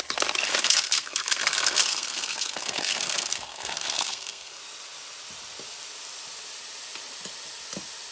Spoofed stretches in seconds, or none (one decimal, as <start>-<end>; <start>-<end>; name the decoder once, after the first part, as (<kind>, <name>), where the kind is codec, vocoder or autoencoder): 0.5-4.6 (codec, SNAC)